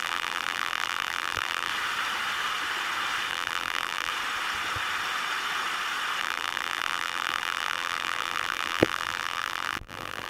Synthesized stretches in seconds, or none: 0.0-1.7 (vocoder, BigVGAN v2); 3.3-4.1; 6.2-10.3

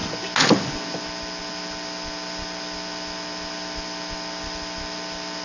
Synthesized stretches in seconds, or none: none

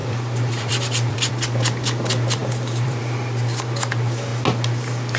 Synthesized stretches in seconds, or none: 0.0-1.3 (vocoder, BigVGAN v2); 2.4-3.0

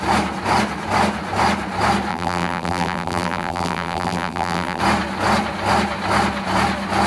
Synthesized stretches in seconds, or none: 2.1-4.8 (vocoder, BigVGAN v2)

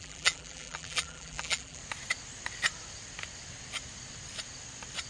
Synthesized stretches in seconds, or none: 0.0-1.8 (vocoder, BigVGAN v2)

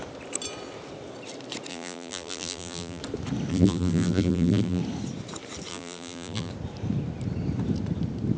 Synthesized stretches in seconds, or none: 1.7-3.0 (vocoder, BigVGAN v2); 3.5-4.8; 5.7-6.5